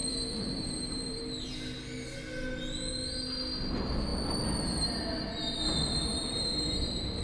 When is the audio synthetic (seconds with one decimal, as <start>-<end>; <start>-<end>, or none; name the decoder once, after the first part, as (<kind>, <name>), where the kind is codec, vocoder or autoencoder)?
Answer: 0.0-1.2 (vocoder, BigVGAN v2); 6.1-7.2